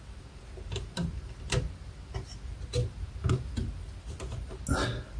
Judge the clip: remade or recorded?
recorded